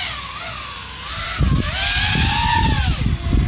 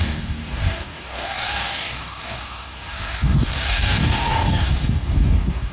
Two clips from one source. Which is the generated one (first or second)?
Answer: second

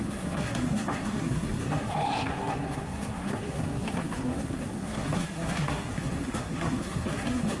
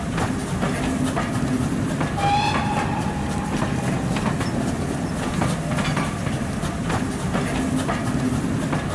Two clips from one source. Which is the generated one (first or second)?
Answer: first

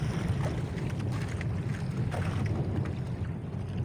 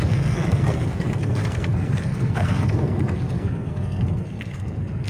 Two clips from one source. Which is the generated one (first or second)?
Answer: second